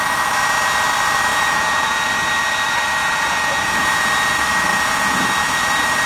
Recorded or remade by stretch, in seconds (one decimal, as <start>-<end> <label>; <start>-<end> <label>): 0.0-1.3 recorded; 1.3-2.1 remade; 2.1-3.0 recorded; 3.0-4.3 remade; 4.3-4.7 recorded; 4.7-5.5 remade; 5.5-6.1 recorded